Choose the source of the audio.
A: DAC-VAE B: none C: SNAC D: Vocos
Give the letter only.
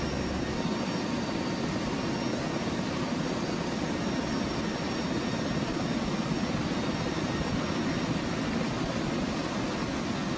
B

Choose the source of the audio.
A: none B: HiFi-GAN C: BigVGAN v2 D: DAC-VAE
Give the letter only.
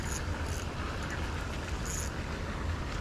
A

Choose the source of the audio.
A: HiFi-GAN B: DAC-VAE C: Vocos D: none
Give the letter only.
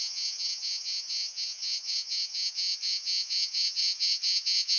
C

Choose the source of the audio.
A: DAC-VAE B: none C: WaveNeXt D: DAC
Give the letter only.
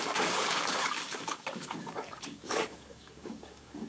D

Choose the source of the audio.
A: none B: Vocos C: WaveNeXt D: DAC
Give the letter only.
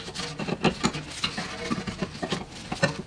A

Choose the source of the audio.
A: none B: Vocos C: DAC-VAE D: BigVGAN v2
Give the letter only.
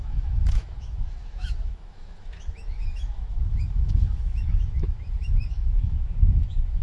C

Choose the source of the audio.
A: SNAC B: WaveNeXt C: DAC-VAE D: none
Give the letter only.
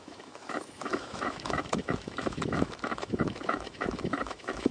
C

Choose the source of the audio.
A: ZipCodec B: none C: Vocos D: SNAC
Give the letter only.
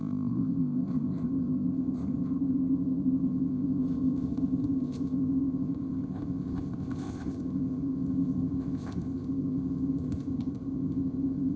A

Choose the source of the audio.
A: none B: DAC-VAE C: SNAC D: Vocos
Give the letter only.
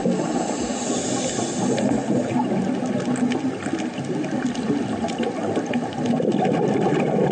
A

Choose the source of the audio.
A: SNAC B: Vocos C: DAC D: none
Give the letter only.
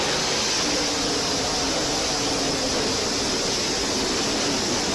D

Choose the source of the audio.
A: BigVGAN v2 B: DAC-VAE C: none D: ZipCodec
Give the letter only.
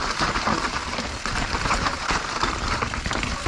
A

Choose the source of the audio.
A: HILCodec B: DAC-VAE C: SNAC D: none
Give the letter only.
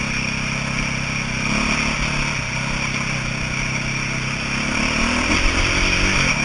D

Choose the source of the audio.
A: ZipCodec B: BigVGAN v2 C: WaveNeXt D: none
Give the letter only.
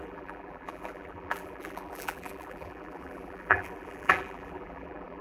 B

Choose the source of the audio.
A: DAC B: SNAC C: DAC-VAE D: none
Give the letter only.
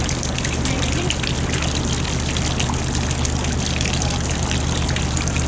D